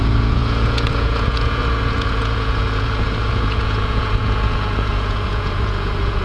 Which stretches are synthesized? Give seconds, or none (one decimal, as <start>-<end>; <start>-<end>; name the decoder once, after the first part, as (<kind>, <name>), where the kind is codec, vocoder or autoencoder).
0.0-6.2 (vocoder, Vocos)